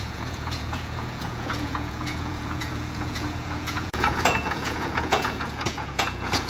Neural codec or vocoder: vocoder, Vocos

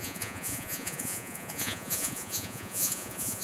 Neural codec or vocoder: vocoder, Vocos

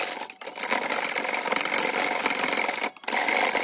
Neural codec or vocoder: none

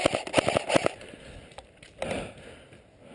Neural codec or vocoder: none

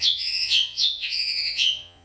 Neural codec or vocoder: vocoder, Vocos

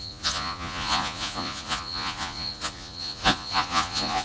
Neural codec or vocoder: vocoder, Vocos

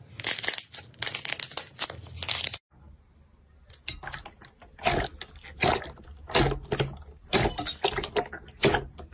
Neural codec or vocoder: none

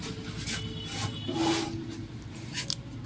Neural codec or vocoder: none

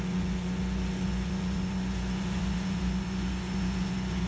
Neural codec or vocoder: vocoder, Vocos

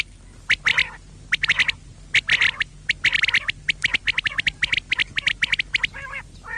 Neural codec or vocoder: none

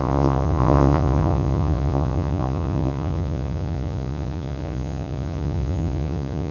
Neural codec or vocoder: vocoder, Vocos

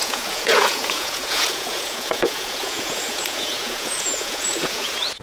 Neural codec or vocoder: vocoder, Vocos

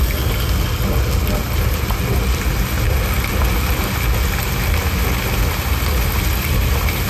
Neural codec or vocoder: none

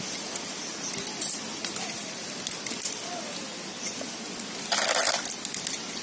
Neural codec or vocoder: none